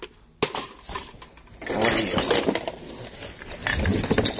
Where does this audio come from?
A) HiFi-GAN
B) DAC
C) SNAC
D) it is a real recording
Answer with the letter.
D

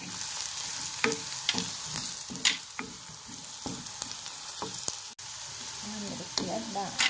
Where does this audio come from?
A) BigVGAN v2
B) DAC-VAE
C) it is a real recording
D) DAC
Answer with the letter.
C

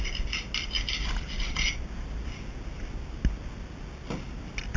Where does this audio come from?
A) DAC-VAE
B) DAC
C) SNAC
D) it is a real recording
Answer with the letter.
D